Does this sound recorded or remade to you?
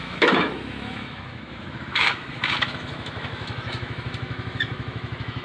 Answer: remade